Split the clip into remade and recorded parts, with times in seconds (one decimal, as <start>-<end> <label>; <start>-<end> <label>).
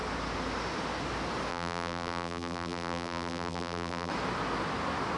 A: 0.0-1.5 recorded; 1.5-4.1 remade; 4.1-5.2 recorded